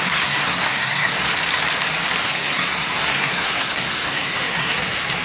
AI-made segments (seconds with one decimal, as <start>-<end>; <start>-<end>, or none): 0.0-1.1; 2.2-5.2